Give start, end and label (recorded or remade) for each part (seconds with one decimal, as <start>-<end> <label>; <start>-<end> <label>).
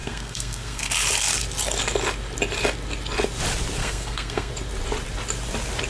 0.0-0.9 remade; 0.9-3.8 recorded; 3.8-4.5 remade; 4.5-5.9 recorded